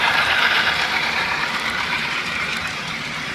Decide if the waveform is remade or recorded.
remade